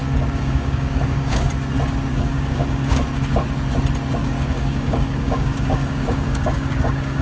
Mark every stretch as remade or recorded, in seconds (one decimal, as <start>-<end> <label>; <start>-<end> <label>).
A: 0.0-1.5 remade; 1.5-2.1 recorded; 2.1-3.0 remade; 3.0-4.2 recorded; 4.2-7.2 remade